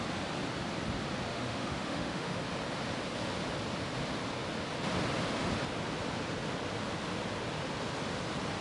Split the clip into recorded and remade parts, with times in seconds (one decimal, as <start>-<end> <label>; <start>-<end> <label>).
0.0-1.3 recorded; 1.3-2.4 remade; 2.4-8.6 recorded